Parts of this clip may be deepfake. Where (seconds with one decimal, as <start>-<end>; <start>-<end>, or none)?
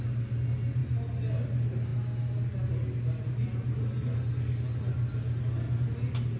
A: none